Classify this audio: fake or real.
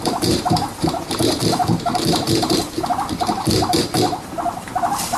fake